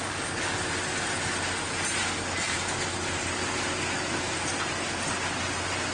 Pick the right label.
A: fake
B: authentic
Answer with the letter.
B